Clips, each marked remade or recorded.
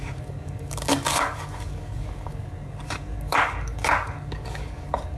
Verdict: remade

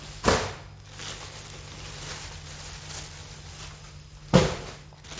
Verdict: recorded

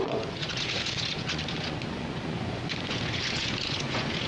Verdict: remade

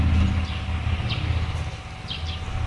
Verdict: recorded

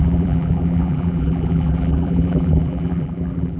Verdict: remade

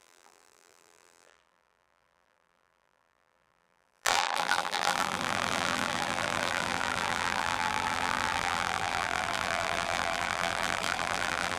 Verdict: remade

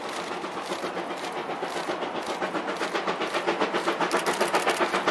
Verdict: recorded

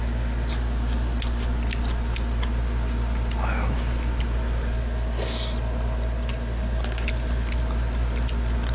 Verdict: recorded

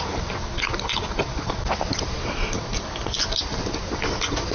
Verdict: recorded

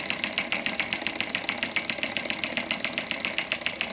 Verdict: recorded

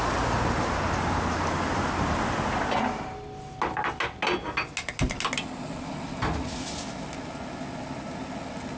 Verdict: recorded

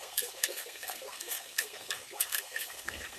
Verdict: remade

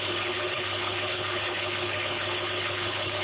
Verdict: remade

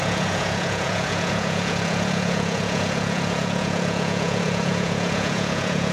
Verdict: remade